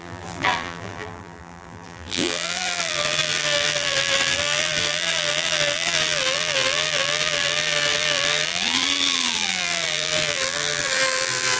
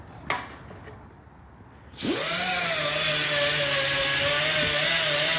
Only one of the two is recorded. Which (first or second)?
second